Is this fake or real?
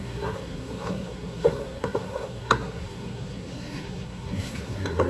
fake